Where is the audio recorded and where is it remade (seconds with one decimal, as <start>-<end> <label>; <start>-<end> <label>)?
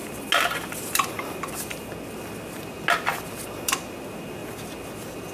0.0-5.3 recorded